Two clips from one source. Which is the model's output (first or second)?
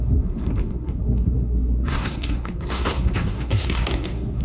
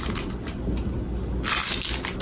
first